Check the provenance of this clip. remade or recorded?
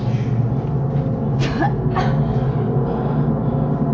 recorded